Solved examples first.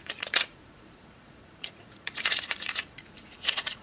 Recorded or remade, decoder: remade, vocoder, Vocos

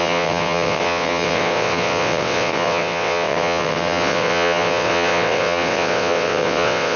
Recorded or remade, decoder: remade, vocoder, WaveNeXt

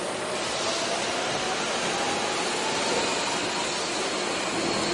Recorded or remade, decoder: recorded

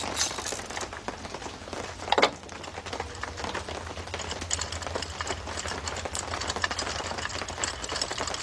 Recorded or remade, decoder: recorded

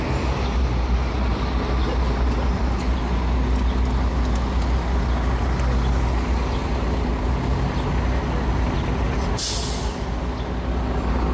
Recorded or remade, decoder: recorded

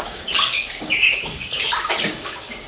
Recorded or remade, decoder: remade, codec, DAC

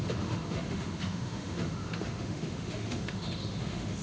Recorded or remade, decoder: remade, autoencoder, DAC-VAE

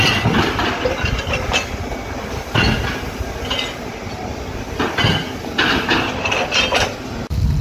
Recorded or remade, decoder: recorded